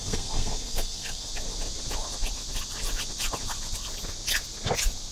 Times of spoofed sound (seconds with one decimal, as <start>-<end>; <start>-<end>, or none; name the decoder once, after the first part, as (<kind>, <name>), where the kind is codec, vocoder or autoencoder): 0.0-1.3 (codec, SNAC)

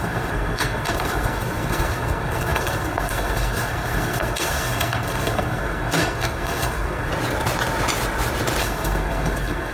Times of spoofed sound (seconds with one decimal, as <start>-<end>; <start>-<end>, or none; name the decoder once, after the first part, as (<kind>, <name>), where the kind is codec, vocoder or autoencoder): 0.0-7.1 (codec, SNAC); 8.6-9.7